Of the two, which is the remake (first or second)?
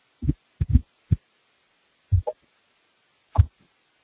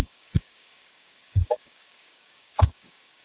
second